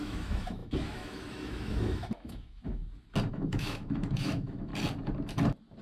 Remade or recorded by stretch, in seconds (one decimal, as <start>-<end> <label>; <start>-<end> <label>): 0.0-2.8 remade; 2.8-3.3 recorded; 3.3-4.7 remade; 4.7-5.8 recorded